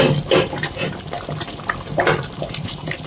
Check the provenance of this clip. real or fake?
fake